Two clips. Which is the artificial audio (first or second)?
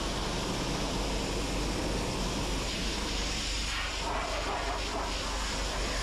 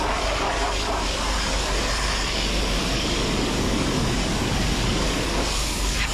second